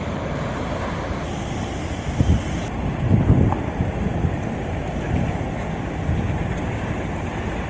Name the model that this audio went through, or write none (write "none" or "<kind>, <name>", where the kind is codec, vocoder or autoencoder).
none